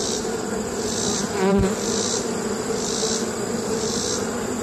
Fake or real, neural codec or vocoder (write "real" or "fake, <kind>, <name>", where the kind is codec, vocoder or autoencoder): real